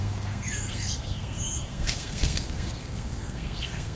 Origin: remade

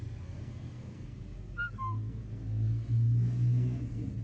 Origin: remade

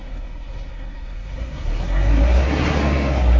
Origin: remade